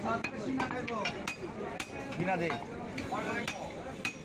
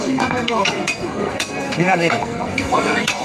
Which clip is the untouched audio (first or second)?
first